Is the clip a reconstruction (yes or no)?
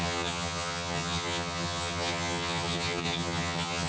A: yes